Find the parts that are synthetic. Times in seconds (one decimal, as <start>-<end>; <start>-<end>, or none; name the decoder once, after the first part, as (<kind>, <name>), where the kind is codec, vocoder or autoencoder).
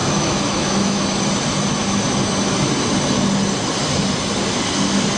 0.0-1.0 (autoencoder, DAC-VAE)